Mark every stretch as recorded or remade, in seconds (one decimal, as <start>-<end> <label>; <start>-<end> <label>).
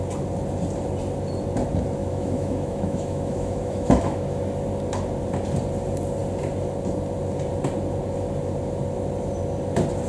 0.0-2.0 recorded; 2.0-4.4 remade; 4.4-10.1 recorded